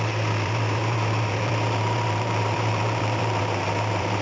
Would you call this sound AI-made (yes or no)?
yes